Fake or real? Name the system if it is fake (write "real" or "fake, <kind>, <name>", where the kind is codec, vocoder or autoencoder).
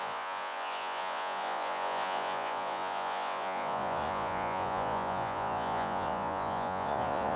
fake, vocoder, Vocos